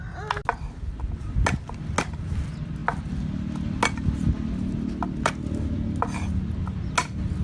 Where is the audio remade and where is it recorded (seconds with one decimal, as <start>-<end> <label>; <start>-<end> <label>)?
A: 0.0-7.4 recorded